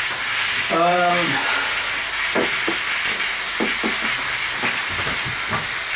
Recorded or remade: recorded